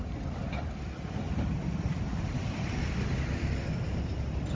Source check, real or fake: real